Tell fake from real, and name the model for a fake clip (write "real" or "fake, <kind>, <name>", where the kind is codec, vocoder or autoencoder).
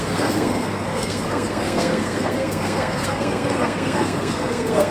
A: fake, codec, SNAC